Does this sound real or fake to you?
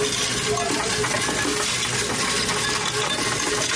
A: real